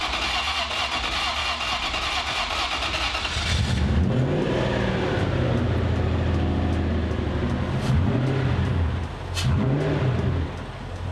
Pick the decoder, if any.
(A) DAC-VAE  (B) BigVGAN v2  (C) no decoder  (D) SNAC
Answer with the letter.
C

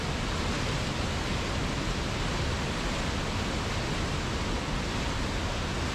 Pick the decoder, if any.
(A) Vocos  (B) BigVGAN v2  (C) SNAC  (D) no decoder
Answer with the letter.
D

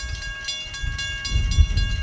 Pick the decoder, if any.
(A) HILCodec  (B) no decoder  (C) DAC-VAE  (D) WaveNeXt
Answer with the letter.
B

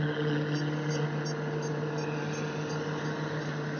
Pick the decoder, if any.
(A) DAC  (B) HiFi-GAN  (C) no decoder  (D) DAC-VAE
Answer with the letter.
C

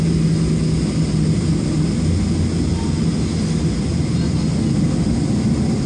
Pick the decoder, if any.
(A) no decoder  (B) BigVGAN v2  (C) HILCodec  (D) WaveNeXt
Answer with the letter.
A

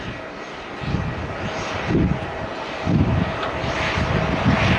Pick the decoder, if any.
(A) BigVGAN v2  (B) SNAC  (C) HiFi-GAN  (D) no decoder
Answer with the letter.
D